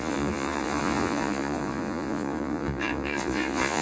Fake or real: fake